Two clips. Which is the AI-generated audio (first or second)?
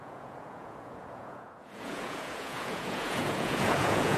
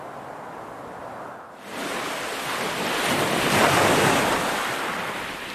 first